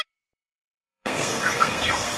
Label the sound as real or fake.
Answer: fake